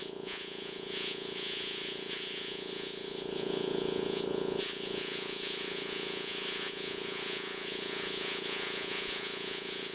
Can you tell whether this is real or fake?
fake